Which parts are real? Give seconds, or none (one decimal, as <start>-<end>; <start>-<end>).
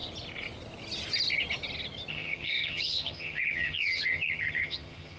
0.0-2.1